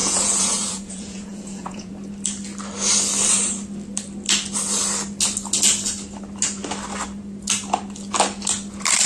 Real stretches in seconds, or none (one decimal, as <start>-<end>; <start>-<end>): 1.9-9.1